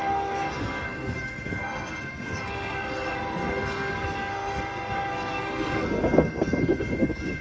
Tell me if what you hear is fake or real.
fake